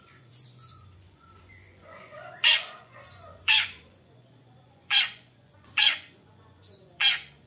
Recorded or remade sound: remade